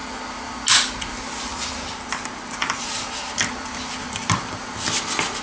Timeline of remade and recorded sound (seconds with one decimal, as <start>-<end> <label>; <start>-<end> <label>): 0.0-1.5 recorded; 1.5-4.7 remade; 4.7-5.4 recorded